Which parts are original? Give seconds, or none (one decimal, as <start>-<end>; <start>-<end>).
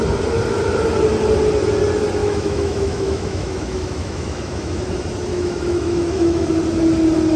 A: 0.0-2.2; 4.8-5.3; 6.5-7.4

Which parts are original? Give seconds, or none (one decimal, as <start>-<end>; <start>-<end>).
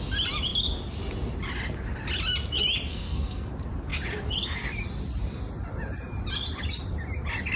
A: 0.0-2.9; 3.5-7.5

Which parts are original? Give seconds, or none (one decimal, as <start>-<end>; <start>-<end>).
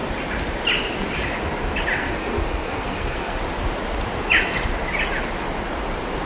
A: 0.0-2.0; 3.4-6.3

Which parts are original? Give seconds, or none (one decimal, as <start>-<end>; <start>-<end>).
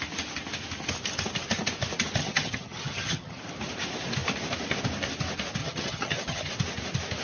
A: 0.0-2.2; 3.4-5.6; 6.5-7.2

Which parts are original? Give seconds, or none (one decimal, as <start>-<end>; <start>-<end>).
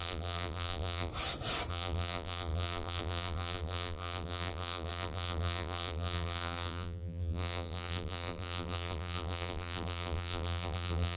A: 1.1-1.7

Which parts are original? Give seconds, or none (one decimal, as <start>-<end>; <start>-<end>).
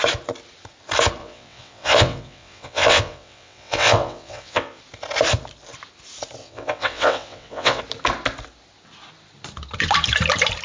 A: 0.0-1.2; 4.8-6.4; 7.8-10.6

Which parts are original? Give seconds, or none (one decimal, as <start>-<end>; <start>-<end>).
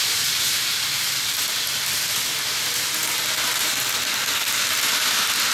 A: 3.0-4.3